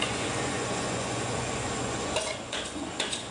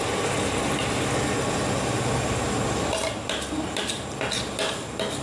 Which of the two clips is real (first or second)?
second